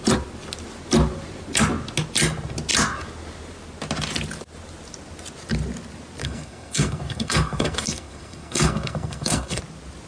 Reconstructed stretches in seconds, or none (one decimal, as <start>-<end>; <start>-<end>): 6.2-9.6